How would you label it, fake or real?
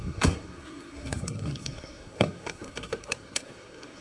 fake